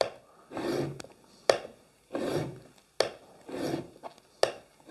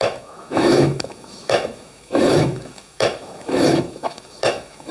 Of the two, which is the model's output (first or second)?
second